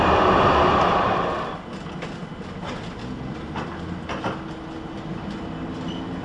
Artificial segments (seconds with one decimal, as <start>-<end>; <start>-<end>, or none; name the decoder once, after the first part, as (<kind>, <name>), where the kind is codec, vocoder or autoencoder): none